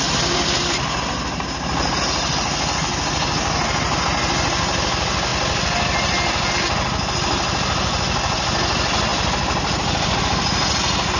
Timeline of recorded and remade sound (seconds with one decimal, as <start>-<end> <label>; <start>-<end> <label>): 0.0-11.2 recorded